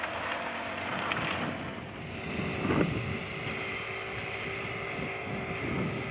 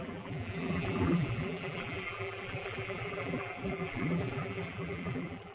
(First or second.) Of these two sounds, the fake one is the second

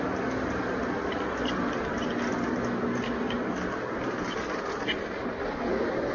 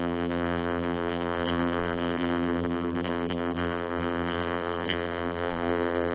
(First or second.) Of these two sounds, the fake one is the second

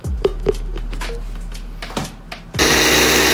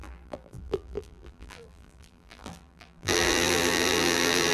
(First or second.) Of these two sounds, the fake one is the second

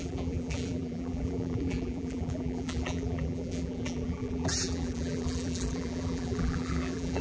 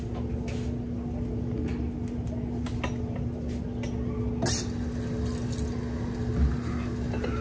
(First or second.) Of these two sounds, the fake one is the first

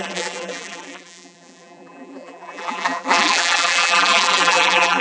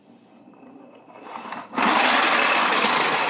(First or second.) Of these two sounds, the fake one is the first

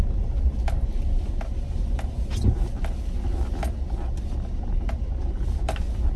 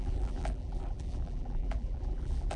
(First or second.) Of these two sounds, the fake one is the second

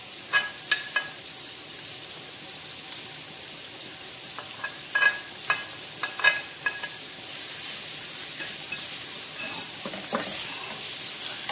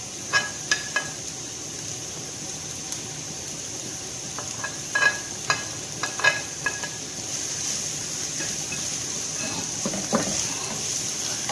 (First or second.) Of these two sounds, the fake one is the second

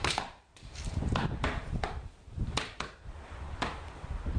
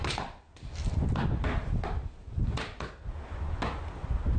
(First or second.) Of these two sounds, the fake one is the first